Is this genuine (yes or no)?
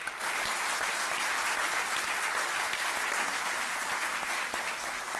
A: yes